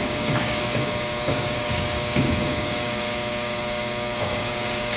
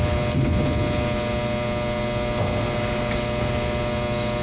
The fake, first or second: first